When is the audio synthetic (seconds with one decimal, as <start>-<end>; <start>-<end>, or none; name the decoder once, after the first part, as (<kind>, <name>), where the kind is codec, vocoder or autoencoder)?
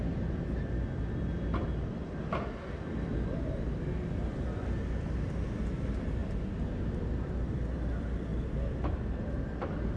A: none